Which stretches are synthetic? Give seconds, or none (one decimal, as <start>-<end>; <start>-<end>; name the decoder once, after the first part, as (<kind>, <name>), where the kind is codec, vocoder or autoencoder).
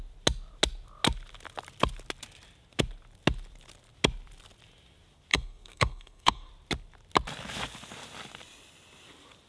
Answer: 5.3-6.5 (codec, SNAC)